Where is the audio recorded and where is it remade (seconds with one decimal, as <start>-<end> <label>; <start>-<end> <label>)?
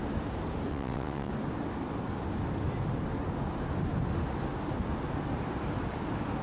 0.0-0.7 recorded; 0.7-1.3 remade; 1.3-6.4 recorded